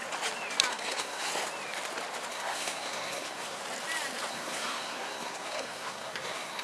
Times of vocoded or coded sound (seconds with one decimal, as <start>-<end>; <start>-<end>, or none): 0.7-1.3; 2.3-3.6; 4.3-6.6